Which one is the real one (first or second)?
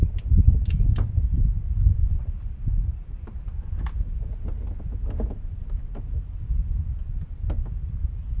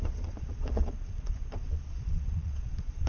first